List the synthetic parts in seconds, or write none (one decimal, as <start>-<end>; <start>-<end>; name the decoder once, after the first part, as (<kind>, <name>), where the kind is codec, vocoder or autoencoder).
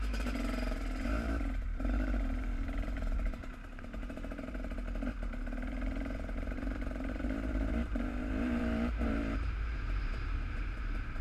0.0-4.8 (vocoder, BigVGAN v2); 5.7-11.2